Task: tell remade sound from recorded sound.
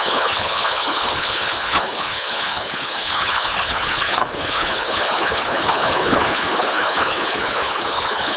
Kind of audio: remade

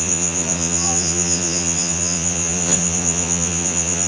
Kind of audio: remade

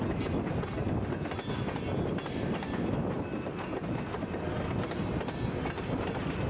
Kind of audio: recorded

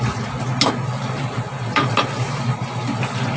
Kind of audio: recorded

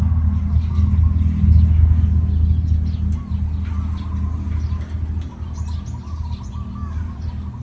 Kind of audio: recorded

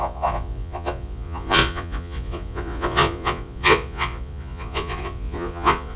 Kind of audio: remade